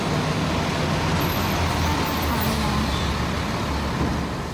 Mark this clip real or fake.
real